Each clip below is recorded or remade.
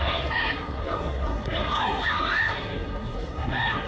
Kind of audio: remade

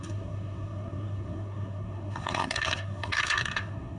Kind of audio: remade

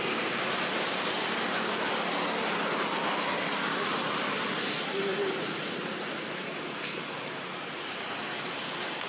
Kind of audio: recorded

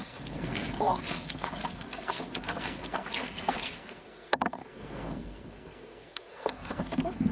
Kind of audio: remade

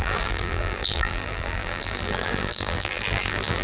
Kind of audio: remade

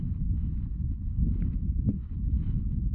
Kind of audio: remade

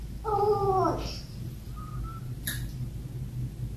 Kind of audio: recorded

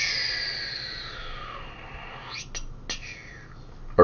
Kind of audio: recorded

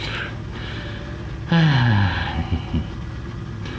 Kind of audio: recorded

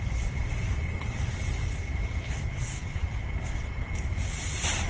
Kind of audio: remade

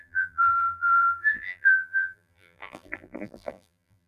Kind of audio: remade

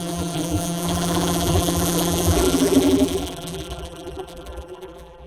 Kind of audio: remade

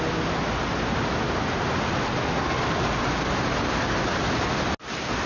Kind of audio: recorded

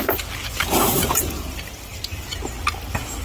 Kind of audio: recorded